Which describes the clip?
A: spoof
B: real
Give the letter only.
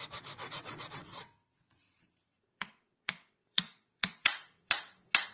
A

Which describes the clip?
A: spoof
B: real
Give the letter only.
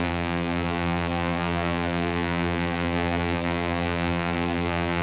A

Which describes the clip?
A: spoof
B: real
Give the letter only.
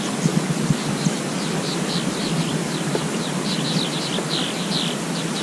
A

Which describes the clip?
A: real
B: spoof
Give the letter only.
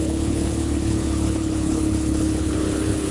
B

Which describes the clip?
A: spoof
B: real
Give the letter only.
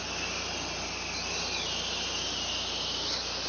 B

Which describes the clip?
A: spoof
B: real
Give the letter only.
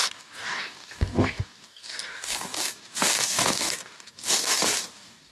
A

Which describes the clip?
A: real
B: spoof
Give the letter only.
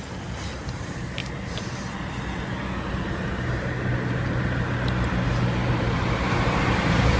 A